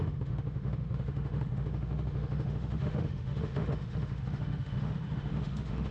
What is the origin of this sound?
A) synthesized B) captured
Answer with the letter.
A